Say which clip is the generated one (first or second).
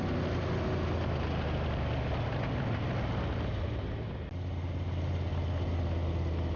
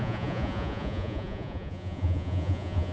second